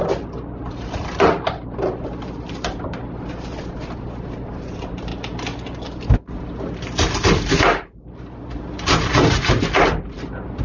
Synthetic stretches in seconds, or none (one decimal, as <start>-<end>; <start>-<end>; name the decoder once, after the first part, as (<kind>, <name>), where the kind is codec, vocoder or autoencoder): none